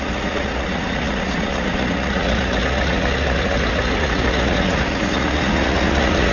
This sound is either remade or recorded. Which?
remade